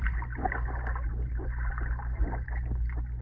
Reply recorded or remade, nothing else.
recorded